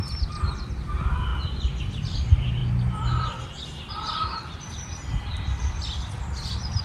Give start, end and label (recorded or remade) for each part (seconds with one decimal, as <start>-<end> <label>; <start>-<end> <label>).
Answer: 0.0-1.3 remade; 1.3-1.8 recorded; 1.8-2.6 remade; 2.6-4.6 recorded; 4.6-6.8 remade